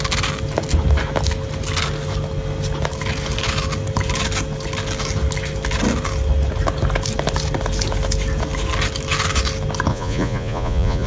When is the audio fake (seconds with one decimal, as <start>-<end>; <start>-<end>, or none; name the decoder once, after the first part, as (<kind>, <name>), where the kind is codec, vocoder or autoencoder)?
9.9-11.1 (vocoder, Vocos)